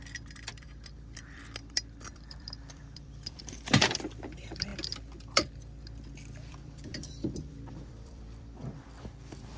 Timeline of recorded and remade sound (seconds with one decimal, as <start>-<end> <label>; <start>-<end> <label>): 0.0-4.7 remade; 4.7-6.5 recorded; 6.5-9.6 remade